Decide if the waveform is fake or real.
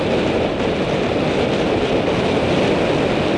real